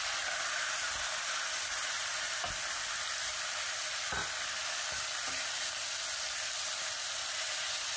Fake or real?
real